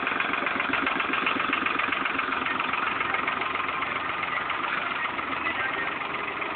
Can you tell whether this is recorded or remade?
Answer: recorded